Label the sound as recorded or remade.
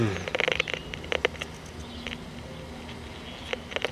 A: recorded